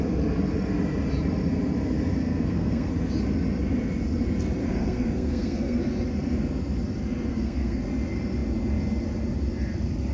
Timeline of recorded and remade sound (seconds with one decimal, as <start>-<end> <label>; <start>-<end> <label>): 0.0-2.2 recorded; 2.2-2.9 remade; 2.9-4.6 recorded; 4.6-5.8 remade; 5.8-7.3 recorded; 7.3-7.8 remade; 7.8-10.1 recorded